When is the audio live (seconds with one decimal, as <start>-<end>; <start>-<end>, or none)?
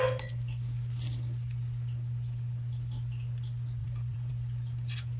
0.0-3.8; 4.3-5.2